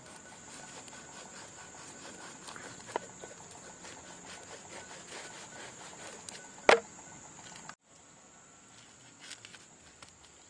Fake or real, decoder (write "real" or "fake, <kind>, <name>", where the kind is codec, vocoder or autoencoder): real